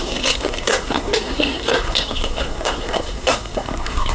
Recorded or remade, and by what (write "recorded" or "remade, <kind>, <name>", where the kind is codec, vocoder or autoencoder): remade, codec, SNAC